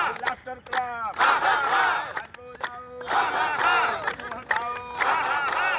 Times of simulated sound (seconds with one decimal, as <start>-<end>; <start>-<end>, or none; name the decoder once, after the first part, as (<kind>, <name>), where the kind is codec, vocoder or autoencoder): none

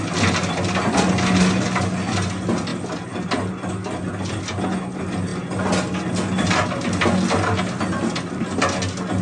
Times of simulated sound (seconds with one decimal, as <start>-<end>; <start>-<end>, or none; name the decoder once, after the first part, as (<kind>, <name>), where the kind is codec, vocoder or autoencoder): none

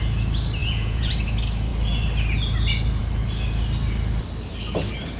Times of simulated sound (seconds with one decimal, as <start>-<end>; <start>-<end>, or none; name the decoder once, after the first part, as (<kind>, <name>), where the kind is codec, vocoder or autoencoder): 0.6-1.1 (vocoder, Vocos)

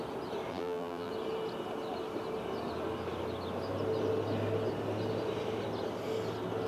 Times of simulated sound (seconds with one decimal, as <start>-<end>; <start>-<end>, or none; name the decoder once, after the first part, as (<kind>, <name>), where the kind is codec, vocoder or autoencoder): 0.5-1.1 (vocoder, BigVGAN v2)

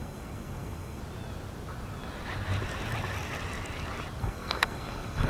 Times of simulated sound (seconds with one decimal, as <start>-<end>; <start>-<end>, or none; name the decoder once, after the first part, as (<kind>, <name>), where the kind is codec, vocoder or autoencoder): 0.0-1.0 (codec, SNAC); 4.2-5.3